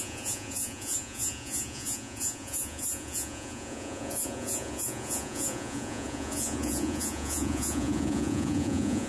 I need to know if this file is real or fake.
fake